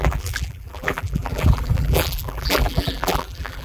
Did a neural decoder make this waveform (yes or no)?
yes